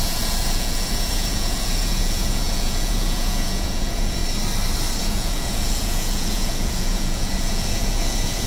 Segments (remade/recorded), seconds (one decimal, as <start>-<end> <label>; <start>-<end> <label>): 0.0-4.2 remade; 4.2-5.0 recorded; 5.0-8.5 remade